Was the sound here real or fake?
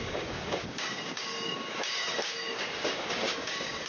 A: fake